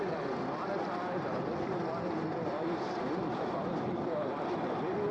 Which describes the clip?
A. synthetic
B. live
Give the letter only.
B